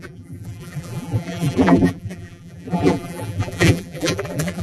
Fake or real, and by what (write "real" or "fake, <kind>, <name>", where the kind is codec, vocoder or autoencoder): fake, vocoder, BigVGAN v2